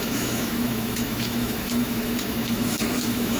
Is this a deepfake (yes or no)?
yes